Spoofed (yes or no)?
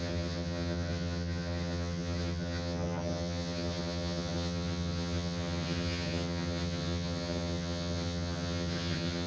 yes